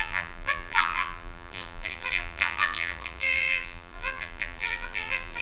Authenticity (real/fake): fake